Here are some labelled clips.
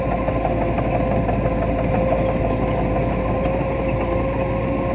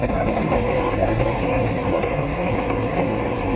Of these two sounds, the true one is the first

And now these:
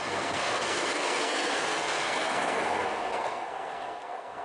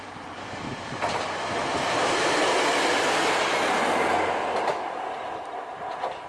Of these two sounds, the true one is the second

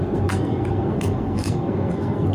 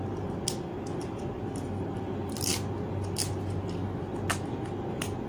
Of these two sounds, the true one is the second